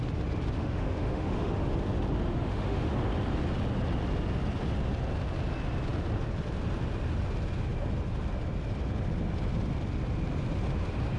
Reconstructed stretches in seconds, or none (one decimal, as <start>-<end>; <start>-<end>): 0.6-1.7; 2.3-2.9